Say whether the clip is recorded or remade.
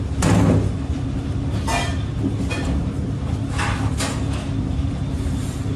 recorded